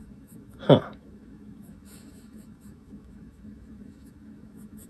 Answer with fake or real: fake